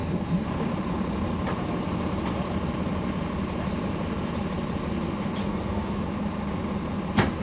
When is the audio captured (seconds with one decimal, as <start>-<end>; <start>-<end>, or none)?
0.0-5.4; 6.0-7.4